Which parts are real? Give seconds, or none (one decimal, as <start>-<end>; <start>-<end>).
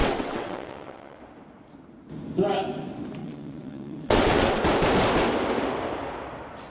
1.2-3.2; 4.6-6.7